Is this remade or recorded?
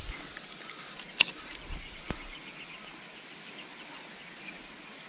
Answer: recorded